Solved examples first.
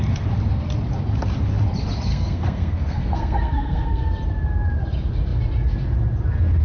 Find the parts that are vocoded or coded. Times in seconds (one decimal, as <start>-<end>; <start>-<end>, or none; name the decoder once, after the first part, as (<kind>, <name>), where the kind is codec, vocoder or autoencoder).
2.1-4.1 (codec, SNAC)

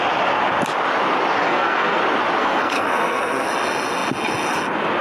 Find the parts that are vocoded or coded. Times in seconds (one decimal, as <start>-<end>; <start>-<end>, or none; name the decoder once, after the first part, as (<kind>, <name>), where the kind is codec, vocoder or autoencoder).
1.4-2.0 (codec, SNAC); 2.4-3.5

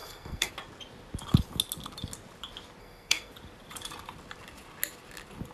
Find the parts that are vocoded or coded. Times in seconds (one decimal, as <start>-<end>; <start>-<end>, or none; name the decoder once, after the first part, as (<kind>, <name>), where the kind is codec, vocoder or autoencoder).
0.0-0.5 (codec, SNAC); 2.8-3.3